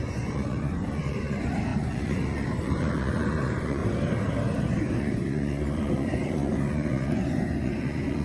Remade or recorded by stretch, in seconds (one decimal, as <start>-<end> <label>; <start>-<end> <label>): 0.0-3.8 remade; 3.8-5.0 recorded; 5.0-8.2 remade